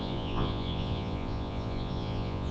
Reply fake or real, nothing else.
fake